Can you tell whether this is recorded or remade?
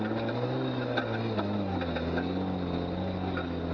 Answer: recorded